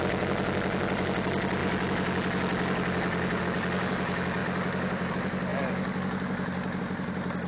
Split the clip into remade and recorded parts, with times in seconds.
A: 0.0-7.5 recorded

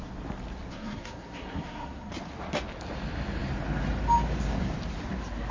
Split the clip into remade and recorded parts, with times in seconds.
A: 0.0-0.7 recorded; 0.7-2.1 remade; 2.1-5.5 recorded